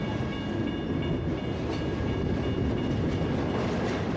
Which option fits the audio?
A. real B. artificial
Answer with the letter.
A